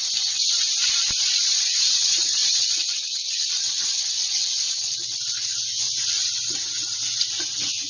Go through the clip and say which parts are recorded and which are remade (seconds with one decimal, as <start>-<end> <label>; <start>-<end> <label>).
0.0-1.3 recorded; 1.3-7.9 remade